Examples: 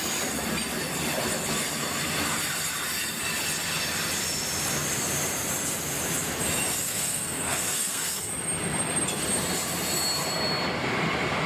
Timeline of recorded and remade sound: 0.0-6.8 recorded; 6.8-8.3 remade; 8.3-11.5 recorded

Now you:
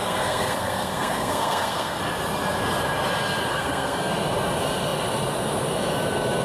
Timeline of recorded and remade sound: 0.0-2.0 remade; 2.0-3.5 recorded; 3.5-4.1 remade; 4.1-6.4 recorded

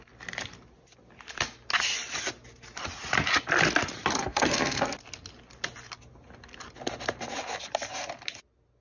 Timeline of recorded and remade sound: 0.0-4.2 recorded; 4.2-4.8 remade; 4.8-8.8 recorded